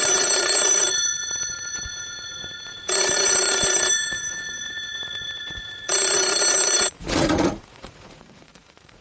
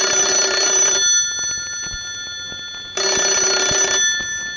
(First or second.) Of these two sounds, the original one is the second